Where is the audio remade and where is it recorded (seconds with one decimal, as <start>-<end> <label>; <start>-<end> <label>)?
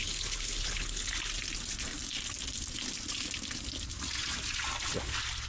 0.0-1.1 remade; 1.1-5.5 recorded